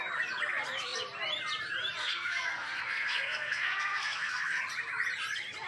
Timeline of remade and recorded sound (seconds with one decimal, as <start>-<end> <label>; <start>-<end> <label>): 0.0-2.0 recorded; 2.0-4.6 remade; 4.6-5.7 recorded